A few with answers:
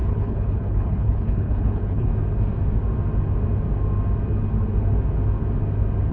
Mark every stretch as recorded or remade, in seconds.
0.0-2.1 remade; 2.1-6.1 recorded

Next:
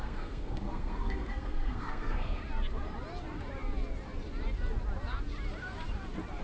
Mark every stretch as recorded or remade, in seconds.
0.0-2.4 remade; 2.4-6.4 recorded

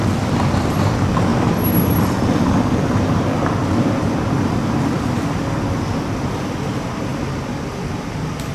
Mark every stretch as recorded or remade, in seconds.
0.0-1.3 recorded; 1.3-3.3 remade; 3.3-8.5 recorded

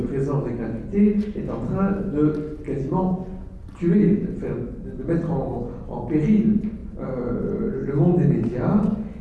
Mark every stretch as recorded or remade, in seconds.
0.0-5.5 recorded; 5.5-6.2 remade; 6.2-6.8 recorded; 6.8-7.3 remade; 7.3-9.2 recorded